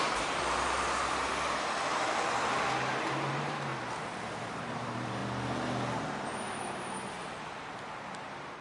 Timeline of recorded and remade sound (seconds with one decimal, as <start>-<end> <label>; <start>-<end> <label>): 0.0-1.3 remade; 1.3-3.3 recorded; 3.3-3.7 remade; 3.7-4.4 recorded; 4.4-5.2 remade; 5.2-7.1 recorded; 7.1-8.6 remade